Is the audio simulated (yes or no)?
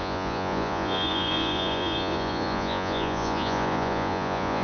yes